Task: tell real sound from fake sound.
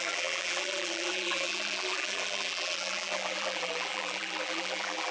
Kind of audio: fake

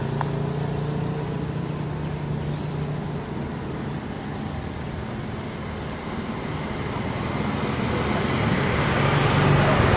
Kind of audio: real